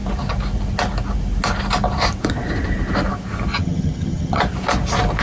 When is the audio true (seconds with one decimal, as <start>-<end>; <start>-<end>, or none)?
0.0-3.5; 4.4-5.2